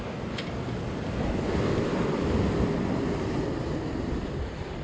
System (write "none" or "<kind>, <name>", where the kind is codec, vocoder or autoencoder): none